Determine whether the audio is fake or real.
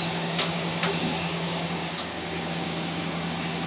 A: fake